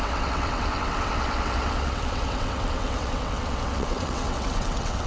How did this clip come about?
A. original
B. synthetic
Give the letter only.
B